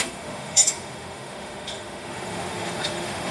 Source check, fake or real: fake